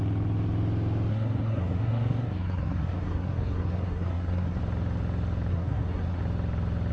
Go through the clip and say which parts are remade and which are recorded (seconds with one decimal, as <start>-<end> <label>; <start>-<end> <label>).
0.0-1.1 recorded; 1.1-4.6 remade; 4.6-5.5 recorded; 5.5-6.2 remade; 6.2-6.9 recorded